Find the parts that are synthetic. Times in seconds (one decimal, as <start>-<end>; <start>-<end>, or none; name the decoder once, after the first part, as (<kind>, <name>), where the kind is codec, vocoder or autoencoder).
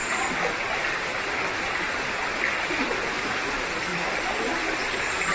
none